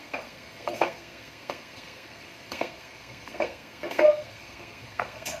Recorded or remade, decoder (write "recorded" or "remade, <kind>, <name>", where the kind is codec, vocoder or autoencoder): remade, codec, SNAC